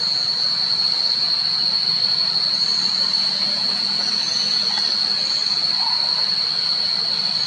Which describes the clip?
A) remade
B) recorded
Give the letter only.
B